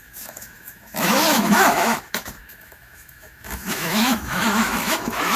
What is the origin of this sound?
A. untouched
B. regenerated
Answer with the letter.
B